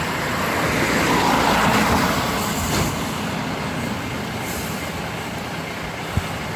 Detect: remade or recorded recorded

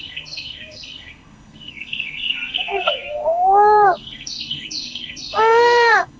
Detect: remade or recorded remade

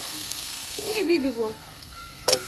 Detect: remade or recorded remade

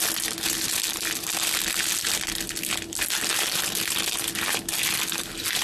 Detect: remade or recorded recorded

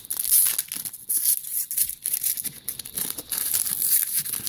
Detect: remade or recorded recorded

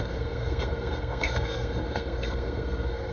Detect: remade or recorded remade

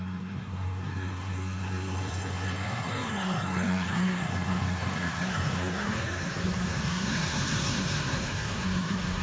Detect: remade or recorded remade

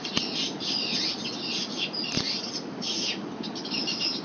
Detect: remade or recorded recorded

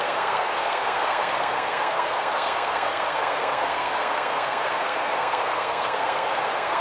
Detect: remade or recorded remade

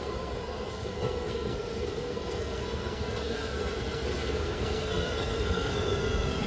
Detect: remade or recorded remade